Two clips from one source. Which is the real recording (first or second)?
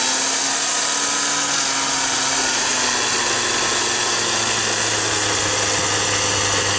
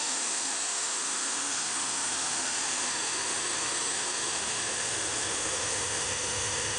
first